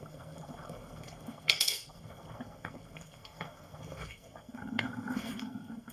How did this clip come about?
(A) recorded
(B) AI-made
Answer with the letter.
B